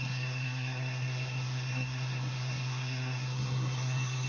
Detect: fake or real fake